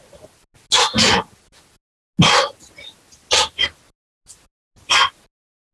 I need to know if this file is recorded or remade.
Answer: recorded